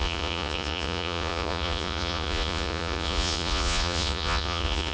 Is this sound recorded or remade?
remade